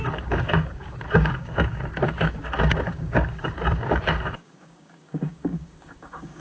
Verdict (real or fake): fake